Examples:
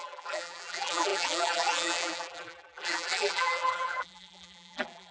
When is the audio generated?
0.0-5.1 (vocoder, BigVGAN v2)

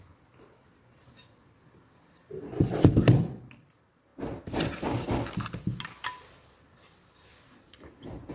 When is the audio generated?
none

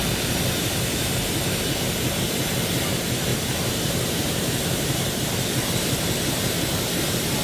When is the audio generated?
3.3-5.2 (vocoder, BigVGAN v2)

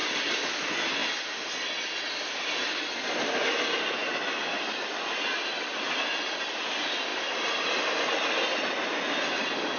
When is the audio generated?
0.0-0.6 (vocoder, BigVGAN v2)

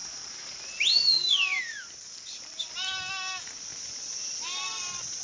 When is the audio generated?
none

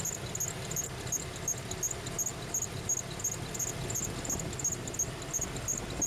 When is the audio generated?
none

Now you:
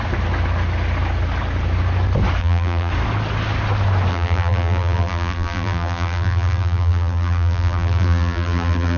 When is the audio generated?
2.4-2.9 (vocoder, BigVGAN v2); 4.1-9.0